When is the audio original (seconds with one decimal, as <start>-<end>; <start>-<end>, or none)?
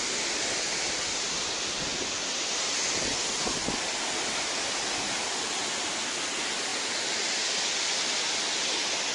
0.0-9.1